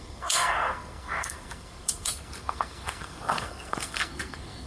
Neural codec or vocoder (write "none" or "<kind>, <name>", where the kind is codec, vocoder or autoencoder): codec, SNAC